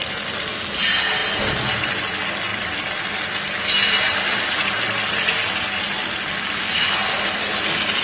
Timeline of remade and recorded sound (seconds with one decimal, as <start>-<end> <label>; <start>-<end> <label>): 0.0-8.0 recorded